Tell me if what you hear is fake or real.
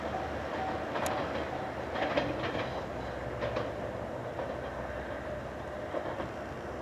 real